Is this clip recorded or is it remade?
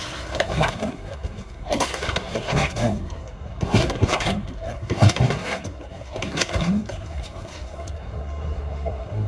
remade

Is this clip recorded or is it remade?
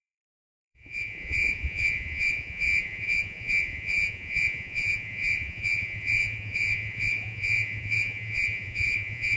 remade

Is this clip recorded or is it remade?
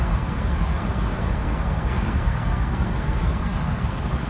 remade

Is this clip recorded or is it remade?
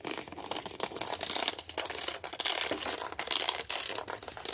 recorded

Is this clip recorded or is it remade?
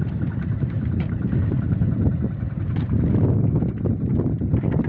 recorded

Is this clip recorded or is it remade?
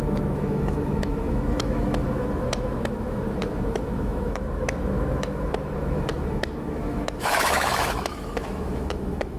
remade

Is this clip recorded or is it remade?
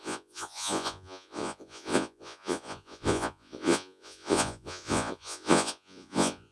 remade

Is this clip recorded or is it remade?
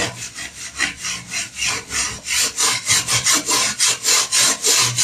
recorded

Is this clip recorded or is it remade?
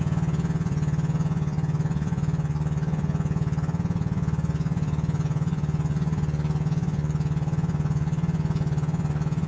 remade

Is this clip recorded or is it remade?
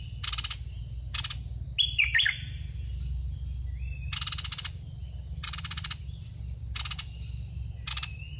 recorded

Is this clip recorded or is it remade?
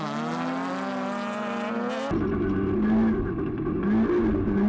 recorded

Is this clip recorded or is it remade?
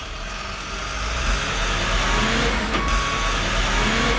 recorded